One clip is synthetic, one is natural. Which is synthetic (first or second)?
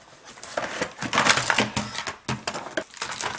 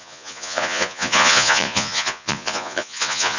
second